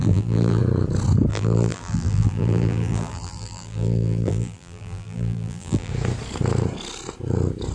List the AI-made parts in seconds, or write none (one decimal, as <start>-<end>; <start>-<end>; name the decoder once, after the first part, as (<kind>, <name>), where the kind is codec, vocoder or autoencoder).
0.0-0.6 (vocoder, BigVGAN v2); 1.3-5.9